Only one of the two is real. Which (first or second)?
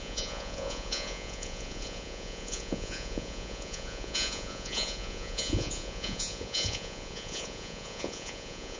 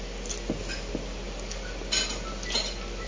second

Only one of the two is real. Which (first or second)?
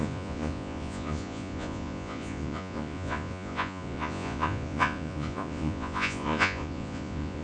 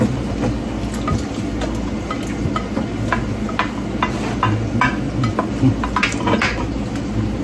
second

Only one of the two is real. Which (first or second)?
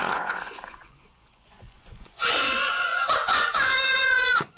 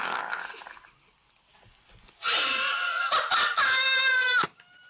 second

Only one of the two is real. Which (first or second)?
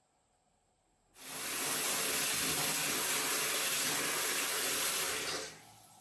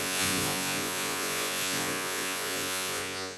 first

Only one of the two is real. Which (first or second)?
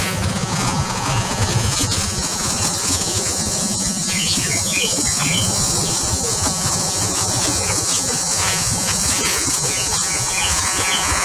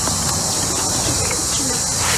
second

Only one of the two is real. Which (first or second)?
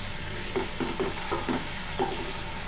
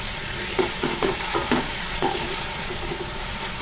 first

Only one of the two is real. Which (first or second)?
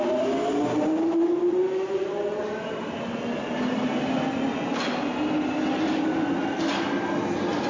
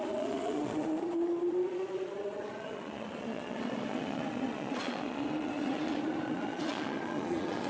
first